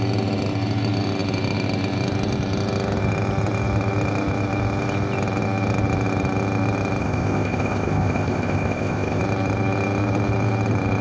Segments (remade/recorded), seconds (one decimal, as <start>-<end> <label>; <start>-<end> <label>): 0.0-7.0 recorded; 7.0-9.2 remade; 9.2-11.0 recorded